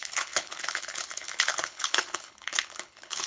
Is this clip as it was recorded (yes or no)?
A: no